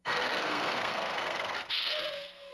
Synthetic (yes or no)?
yes